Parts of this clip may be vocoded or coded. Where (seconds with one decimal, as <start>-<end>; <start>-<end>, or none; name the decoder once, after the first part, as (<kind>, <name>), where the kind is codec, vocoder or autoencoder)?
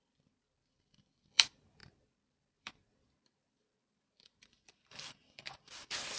0.0-6.2 (vocoder, BigVGAN v2)